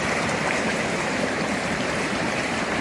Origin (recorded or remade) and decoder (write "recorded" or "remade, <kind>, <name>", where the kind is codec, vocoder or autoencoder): remade, vocoder, BigVGAN v2